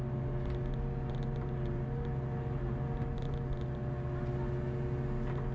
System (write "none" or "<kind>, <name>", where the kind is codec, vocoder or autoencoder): none